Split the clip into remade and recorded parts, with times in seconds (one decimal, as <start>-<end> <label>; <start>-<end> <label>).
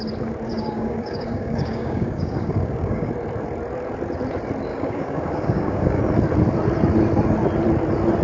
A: 0.0-0.5 recorded; 0.5-3.1 remade; 3.1-4.7 recorded; 4.7-6.0 remade; 6.0-8.2 recorded